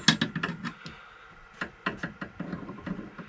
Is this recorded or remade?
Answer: recorded